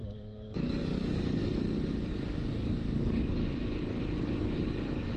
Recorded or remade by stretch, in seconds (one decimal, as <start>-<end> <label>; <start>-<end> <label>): 0.0-1.4 remade; 1.4-2.1 recorded; 2.1-3.4 remade; 3.4-4.4 recorded; 4.4-5.2 remade